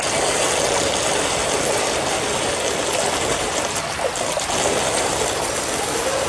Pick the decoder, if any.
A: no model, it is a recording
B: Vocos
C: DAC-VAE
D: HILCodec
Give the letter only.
A